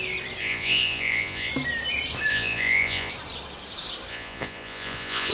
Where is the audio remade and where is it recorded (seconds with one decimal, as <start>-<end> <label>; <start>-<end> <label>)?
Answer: 0.0-0.4 recorded; 0.4-1.5 remade; 1.5-2.3 recorded; 2.3-3.1 remade; 3.1-4.1 recorded; 4.1-5.3 remade